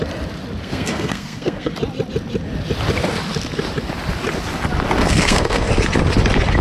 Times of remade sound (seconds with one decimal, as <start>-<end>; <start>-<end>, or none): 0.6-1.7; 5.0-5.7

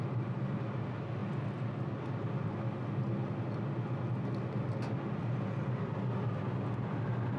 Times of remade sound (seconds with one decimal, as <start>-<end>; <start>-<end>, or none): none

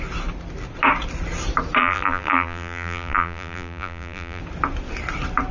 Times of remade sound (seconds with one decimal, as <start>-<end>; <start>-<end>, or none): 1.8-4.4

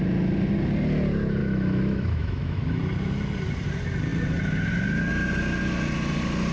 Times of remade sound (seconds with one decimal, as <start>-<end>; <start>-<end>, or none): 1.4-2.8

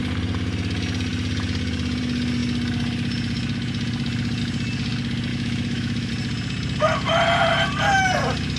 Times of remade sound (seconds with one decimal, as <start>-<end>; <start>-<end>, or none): 5.3-6.1

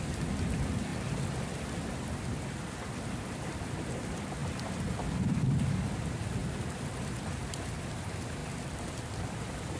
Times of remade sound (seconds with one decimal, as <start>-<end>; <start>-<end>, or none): 0.0-0.9; 2.2-4.4; 5.2-6.4; 7.8-8.4; 9.1-9.8